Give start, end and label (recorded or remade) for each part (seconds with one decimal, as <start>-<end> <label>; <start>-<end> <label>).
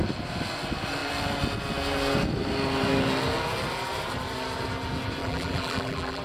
0.0-5.2 recorded; 5.2-6.2 remade